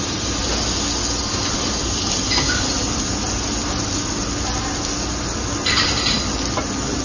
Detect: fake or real real